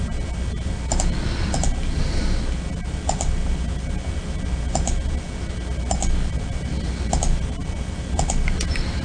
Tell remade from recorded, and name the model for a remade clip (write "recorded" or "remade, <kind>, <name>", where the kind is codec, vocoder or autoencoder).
recorded